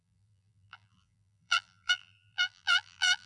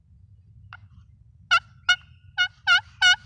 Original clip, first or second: second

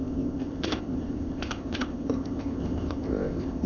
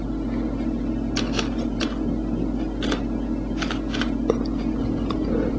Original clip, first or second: second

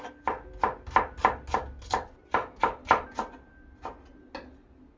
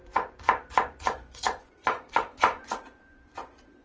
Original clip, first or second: first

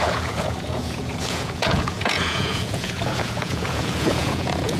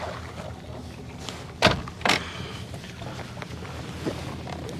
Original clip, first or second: second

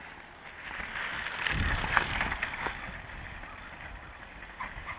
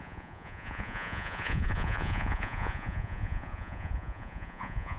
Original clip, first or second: first